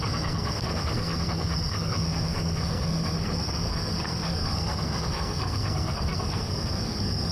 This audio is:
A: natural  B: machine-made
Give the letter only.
B